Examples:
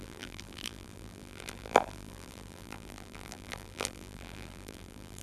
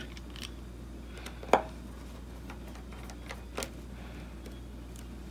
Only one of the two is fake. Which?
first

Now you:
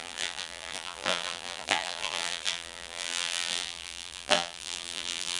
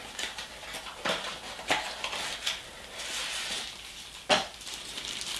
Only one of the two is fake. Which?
first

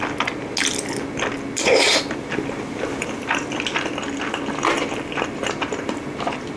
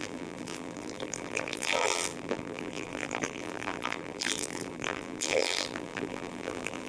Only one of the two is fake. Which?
second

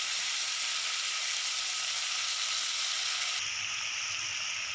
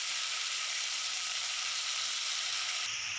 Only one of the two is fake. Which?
second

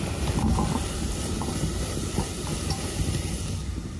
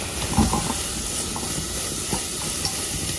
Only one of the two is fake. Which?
first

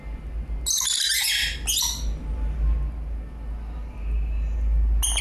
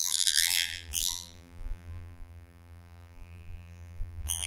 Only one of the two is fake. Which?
second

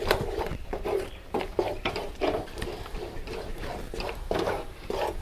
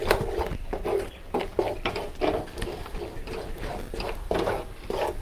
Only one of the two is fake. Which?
first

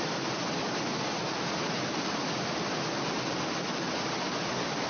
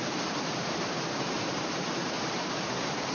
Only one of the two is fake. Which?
second